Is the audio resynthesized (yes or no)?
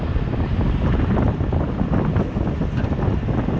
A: no